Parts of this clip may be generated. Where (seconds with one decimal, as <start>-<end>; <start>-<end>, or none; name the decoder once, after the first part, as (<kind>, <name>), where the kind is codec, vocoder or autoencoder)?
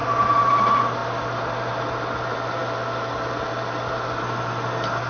none